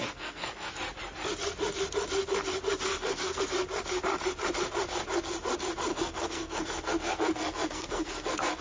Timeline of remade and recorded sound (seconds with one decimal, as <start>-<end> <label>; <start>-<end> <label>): 0.0-0.7 remade; 0.7-2.9 recorded; 2.9-3.4 remade; 3.4-5.9 recorded; 5.9-8.6 remade